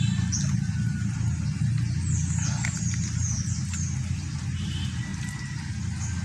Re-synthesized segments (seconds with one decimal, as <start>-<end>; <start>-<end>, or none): none